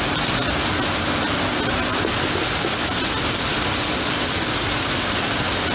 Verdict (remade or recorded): recorded